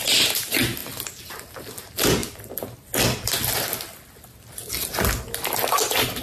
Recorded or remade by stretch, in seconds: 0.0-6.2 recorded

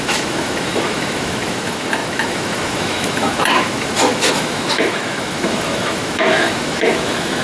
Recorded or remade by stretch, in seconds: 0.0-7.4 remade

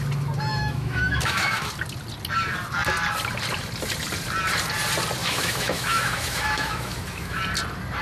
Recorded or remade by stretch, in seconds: 0.0-0.5 recorded; 0.5-1.7 remade; 1.7-5.2 recorded; 5.2-7.4 remade; 7.4-8.0 recorded

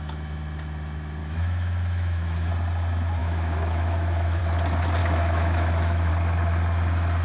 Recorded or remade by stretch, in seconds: 0.0-1.2 recorded; 1.2-2.5 remade; 2.5-3.2 recorded; 3.2-4.4 remade; 4.4-5.0 recorded; 5.0-6.1 remade; 6.1-7.2 recorded